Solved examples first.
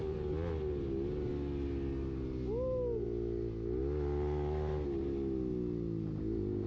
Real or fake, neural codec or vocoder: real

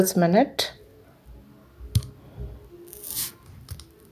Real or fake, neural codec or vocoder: real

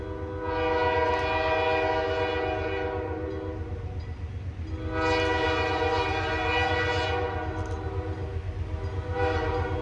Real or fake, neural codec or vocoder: real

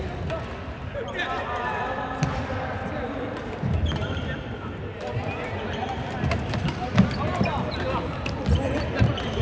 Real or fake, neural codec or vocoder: real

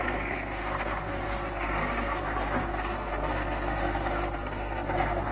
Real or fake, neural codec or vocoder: fake, codec, SNAC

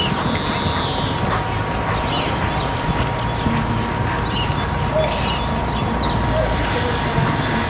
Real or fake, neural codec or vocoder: real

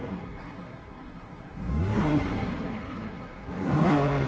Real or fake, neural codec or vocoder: fake, codec, SNAC